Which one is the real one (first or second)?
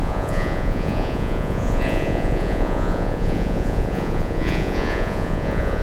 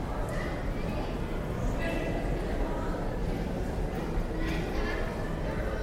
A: second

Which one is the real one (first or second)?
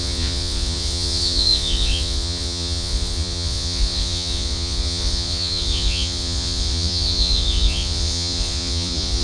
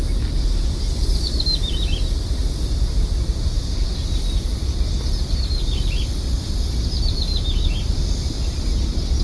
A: second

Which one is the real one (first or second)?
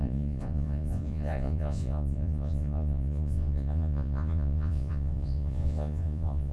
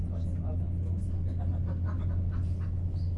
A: second